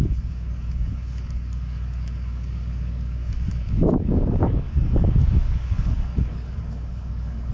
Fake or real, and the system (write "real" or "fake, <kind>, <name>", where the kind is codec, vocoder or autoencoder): fake, codec, DAC